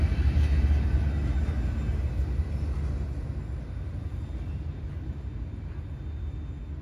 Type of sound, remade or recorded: recorded